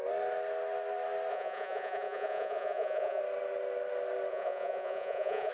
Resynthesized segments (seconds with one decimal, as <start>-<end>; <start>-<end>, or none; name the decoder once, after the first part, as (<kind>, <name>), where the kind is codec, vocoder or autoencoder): 1.3-3.2 (vocoder, Vocos); 4.3-5.5

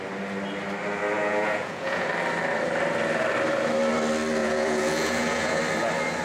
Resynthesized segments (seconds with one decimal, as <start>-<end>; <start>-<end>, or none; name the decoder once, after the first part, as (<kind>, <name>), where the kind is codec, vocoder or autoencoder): 1.2-2.1 (vocoder, Vocos); 4.4-5.6

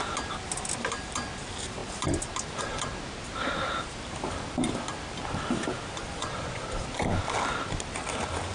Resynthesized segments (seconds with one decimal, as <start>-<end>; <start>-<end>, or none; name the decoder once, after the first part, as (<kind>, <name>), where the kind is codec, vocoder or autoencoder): 6.0-6.6 (vocoder, Vocos)

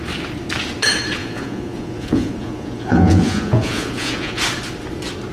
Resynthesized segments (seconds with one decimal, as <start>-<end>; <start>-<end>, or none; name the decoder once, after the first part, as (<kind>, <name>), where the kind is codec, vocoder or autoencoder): 1.2-4.4 (vocoder, Vocos)

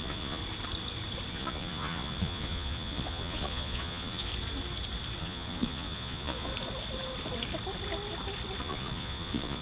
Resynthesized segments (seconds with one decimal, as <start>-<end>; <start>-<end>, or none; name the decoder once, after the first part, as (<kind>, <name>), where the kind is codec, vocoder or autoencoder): 0.0-0.4 (vocoder, Vocos); 1.3-4.3; 5.2-6.5; 8.6-9.6

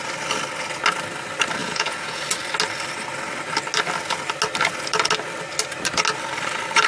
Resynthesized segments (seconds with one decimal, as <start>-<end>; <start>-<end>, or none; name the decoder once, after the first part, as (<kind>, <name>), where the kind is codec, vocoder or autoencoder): 1.6-2.2 (vocoder, Vocos)

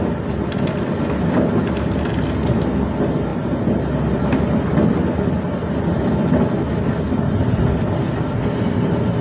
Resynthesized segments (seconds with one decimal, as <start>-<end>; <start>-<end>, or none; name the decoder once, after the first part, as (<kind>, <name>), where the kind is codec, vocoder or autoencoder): none